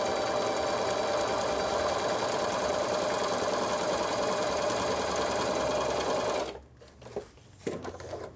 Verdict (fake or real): real